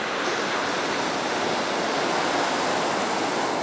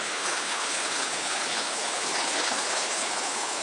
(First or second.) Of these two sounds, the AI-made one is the second